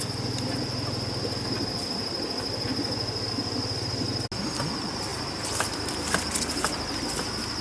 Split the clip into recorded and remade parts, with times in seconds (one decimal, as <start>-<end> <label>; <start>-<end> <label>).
0.0-7.6 recorded